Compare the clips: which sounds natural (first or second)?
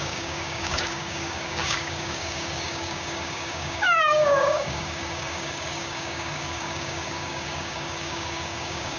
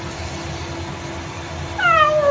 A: second